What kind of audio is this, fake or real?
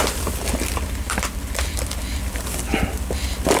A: fake